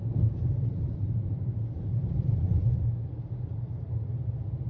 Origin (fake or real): fake